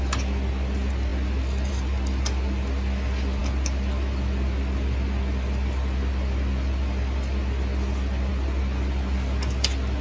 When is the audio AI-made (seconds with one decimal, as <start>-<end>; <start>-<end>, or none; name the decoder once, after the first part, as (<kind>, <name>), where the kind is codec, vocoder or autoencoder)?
none

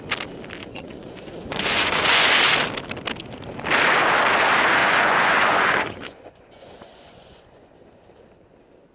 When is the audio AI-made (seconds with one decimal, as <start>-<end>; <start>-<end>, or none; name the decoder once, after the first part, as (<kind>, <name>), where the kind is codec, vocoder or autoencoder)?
0.6-2.4 (vocoder, Vocos); 4.8-8.0

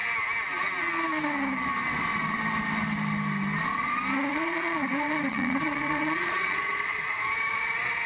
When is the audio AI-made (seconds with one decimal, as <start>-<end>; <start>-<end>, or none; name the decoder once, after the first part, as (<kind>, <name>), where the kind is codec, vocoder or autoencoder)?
4.3-8.1 (vocoder, Vocos)

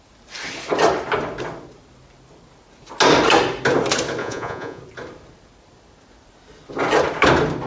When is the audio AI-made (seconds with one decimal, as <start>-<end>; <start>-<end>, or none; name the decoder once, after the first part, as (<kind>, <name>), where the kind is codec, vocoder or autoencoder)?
4.2-4.8 (vocoder, Vocos)

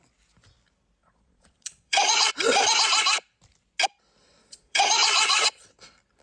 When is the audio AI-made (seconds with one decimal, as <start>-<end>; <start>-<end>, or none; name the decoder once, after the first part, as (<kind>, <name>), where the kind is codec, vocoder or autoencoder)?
1.0-2.3 (vocoder, Vocos); 4.4-5.7

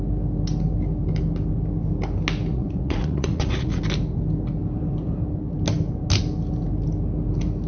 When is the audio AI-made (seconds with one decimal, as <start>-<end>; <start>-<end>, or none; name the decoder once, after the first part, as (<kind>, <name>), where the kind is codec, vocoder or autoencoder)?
2.5-3.8 (vocoder, Vocos)